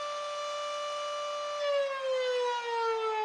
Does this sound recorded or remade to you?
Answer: recorded